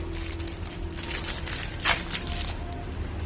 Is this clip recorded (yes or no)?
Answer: yes